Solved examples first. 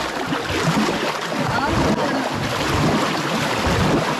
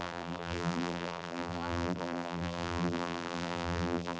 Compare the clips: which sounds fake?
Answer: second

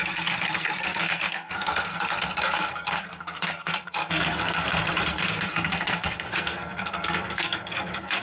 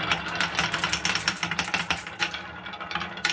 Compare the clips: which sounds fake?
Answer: first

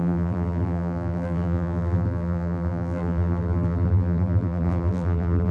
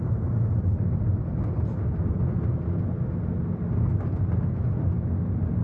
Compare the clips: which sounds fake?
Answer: first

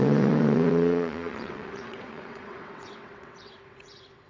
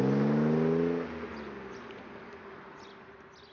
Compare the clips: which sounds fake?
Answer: first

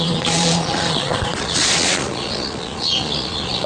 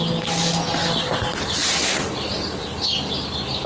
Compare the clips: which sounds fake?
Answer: first